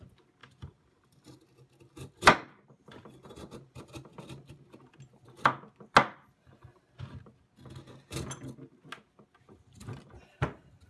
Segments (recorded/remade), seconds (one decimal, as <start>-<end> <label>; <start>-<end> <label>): 0.0-0.4 recorded; 0.4-4.9 remade; 4.9-6.7 recorded; 6.7-7.3 remade; 7.3-10.9 recorded